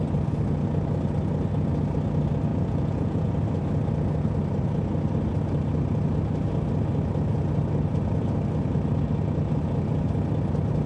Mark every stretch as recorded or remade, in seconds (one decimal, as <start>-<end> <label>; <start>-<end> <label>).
0.0-2.5 recorded; 2.5-3.3 remade; 3.3-10.9 recorded